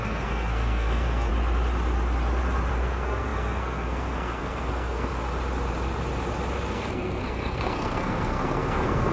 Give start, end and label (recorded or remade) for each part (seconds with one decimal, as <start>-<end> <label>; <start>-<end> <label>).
0.0-1.3 remade; 1.3-2.7 recorded; 2.7-5.1 remade; 5.1-6.7 recorded; 6.7-9.1 remade

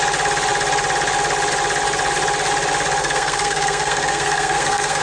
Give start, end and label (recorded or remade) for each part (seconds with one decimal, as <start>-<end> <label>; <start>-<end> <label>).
0.0-3.0 recorded; 3.0-5.0 remade